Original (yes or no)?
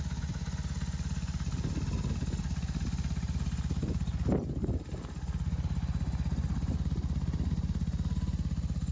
yes